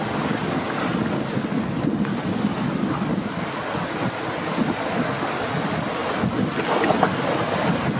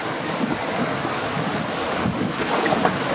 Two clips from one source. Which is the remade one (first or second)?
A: second